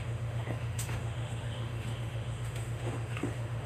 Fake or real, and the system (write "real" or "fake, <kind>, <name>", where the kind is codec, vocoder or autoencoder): fake, autoencoder, DAC-VAE